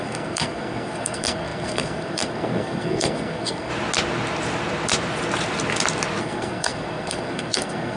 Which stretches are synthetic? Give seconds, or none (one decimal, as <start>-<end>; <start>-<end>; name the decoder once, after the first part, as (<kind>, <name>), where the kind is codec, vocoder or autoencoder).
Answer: 0.0-3.7 (codec, SNAC); 6.2-8.0